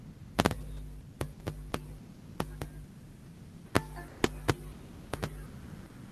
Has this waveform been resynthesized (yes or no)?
no